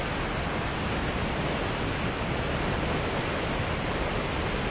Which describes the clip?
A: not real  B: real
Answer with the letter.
B